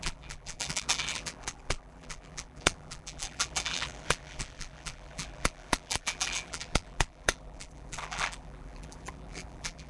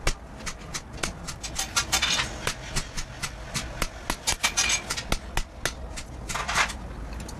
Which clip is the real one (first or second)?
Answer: second